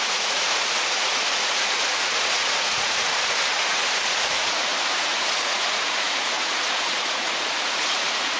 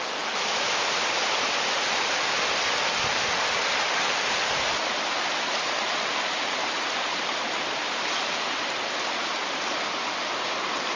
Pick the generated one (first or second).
first